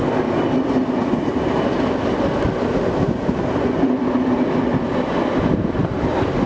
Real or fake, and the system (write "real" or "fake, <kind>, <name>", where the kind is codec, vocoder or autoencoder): real